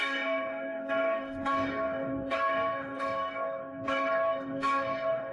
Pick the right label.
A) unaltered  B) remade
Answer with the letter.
B